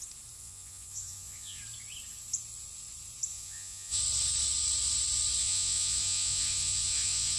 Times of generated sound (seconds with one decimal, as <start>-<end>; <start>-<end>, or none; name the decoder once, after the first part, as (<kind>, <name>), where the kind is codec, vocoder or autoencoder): 0.4-1.6 (vocoder, Vocos); 3.3-4.0; 5.4-7.4